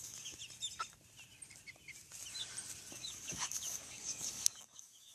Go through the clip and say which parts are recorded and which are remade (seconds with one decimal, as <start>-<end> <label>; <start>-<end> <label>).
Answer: 0.0-0.4 remade; 0.4-2.9 recorded; 2.9-5.1 remade